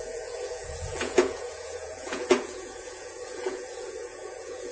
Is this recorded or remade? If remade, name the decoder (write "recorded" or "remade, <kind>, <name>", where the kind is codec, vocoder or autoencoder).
remade, vocoder, Vocos